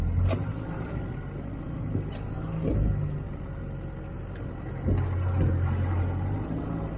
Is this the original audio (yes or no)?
yes